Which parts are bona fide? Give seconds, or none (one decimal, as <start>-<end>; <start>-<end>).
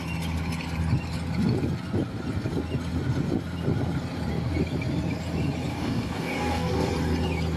0.0-5.7; 6.9-7.6